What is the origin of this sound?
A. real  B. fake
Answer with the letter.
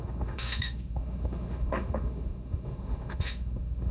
B